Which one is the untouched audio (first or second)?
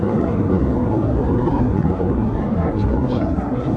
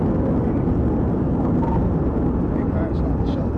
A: second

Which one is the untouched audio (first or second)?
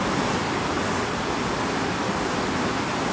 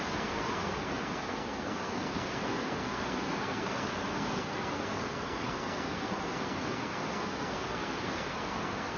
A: first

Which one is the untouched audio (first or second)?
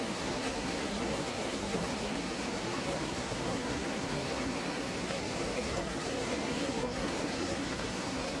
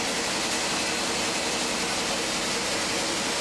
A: second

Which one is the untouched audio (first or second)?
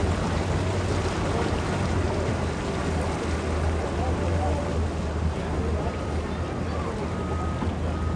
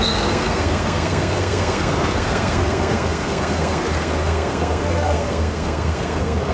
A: first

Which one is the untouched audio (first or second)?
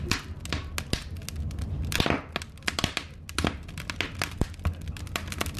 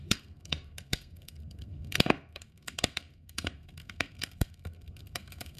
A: first